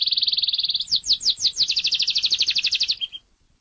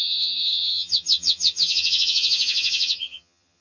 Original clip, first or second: first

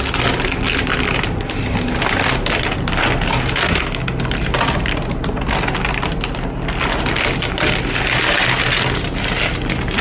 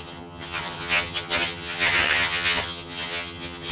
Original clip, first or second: first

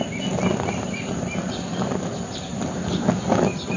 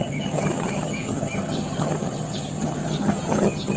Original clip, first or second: first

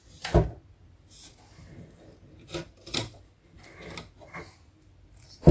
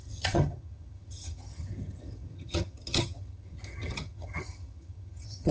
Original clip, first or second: first